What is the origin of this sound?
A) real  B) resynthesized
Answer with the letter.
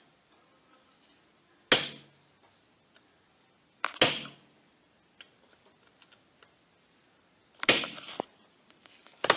A